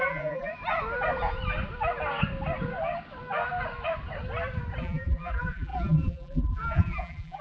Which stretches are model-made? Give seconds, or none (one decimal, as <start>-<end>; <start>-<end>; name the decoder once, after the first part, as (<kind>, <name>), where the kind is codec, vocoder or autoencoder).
0.0-0.5 (vocoder, BigVGAN v2); 4.8-7.4